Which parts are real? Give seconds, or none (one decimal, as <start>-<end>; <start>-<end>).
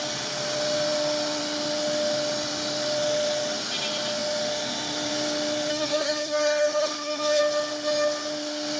0.0-5.7; 7.4-8.8